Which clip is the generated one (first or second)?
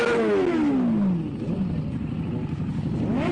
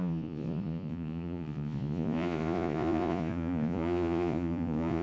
second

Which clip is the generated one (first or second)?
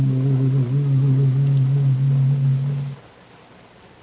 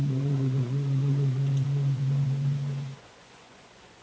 second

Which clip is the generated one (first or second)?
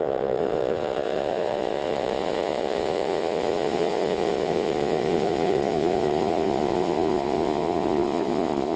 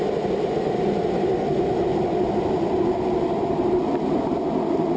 first